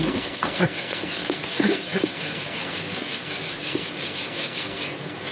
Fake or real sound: fake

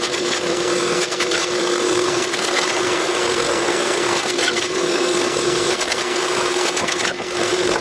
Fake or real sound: fake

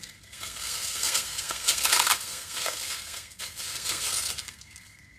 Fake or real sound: fake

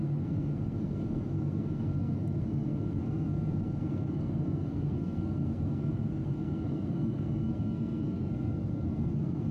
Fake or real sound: fake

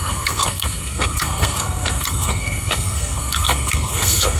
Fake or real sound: fake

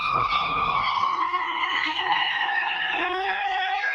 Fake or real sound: fake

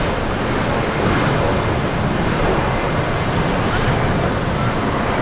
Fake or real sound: real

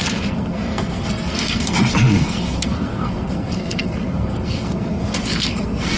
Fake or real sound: fake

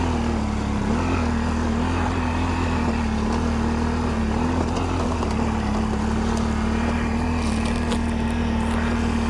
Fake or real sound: real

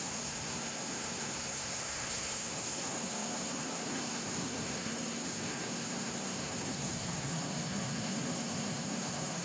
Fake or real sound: fake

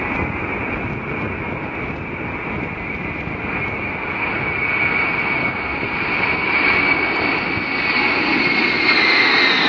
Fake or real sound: real